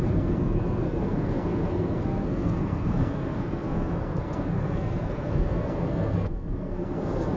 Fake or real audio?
fake